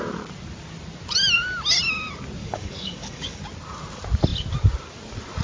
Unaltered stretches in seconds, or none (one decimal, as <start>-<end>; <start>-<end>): 0.0-2.4; 3.4-5.4